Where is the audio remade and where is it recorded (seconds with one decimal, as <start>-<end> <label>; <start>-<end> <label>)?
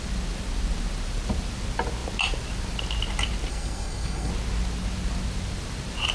0.0-3.5 recorded; 3.5-4.3 remade; 4.3-6.1 recorded